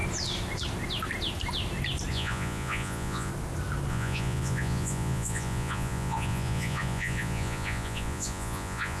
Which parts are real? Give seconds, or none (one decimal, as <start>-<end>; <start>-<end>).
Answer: 0.0-2.1; 3.3-3.9